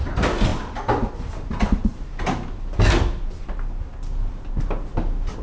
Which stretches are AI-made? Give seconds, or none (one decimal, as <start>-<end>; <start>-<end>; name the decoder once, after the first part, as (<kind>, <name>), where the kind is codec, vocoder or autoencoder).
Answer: none